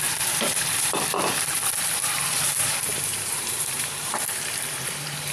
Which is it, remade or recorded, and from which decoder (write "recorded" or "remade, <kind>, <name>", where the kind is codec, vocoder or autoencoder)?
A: remade, vocoder, BigVGAN v2